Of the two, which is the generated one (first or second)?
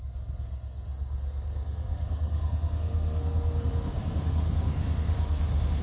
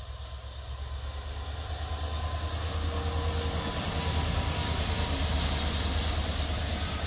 first